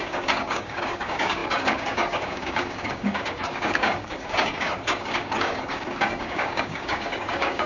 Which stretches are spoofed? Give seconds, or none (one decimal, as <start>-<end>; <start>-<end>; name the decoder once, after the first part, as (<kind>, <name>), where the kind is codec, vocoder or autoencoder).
0.0-7.7 (codec, DAC)